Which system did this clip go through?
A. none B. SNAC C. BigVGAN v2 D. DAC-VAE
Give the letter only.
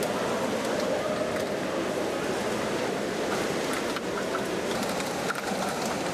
A